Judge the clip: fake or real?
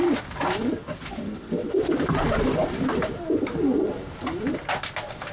real